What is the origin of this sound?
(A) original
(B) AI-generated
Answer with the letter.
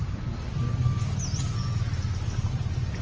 A